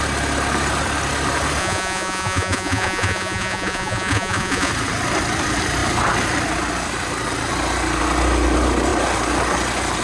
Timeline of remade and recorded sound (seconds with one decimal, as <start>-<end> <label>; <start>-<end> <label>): 0.0-1.6 recorded; 1.6-4.7 remade; 4.7-10.0 recorded